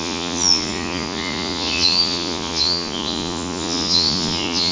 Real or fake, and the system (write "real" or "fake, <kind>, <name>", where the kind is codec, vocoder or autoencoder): fake, vocoder, Vocos